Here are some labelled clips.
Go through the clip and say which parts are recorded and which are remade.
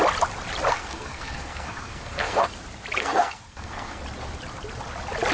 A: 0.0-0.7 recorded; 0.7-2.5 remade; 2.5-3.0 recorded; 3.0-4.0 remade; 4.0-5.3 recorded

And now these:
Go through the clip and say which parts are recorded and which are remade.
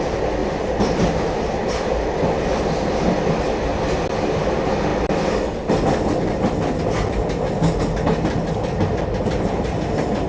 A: 0.0-10.3 recorded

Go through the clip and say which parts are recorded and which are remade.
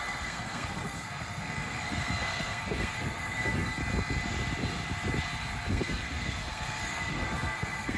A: 0.0-3.8 remade; 3.8-5.7 recorded; 5.7-8.0 remade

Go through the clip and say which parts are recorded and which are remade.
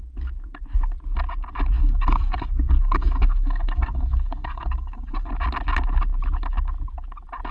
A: 0.0-1.8 recorded; 1.8-5.3 remade; 5.3-7.5 recorded